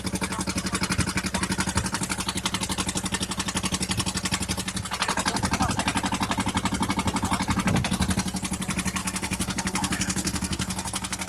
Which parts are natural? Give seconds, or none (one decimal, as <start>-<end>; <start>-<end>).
0.0-9.0